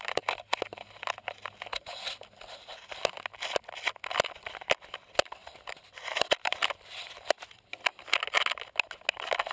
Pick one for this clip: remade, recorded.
recorded